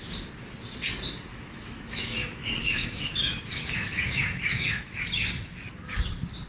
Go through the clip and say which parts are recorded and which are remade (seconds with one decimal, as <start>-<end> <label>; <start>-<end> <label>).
0.0-1.3 recorded; 1.3-5.0 remade; 5.0-6.5 recorded